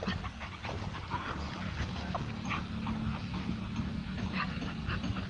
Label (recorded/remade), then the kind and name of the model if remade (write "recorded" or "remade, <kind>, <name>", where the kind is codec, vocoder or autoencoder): recorded